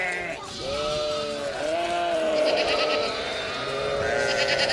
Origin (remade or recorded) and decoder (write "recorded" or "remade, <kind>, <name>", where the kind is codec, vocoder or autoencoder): recorded